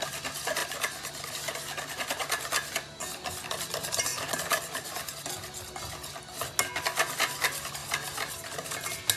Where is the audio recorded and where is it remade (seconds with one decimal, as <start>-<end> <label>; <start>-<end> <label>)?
0.0-9.2 recorded